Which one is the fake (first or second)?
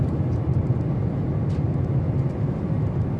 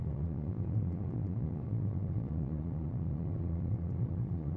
second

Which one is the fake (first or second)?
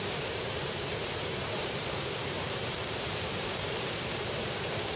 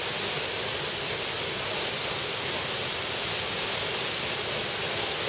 first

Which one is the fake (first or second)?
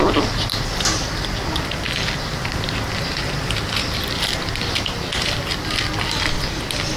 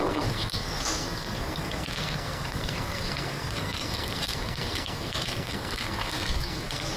second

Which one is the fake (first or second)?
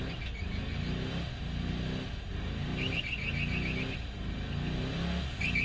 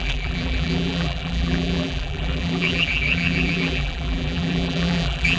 second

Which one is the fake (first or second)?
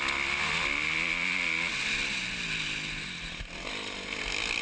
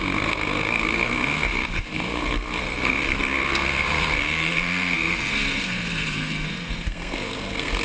second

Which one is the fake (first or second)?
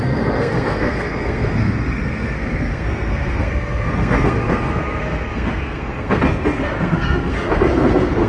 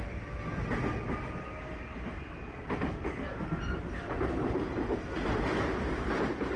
first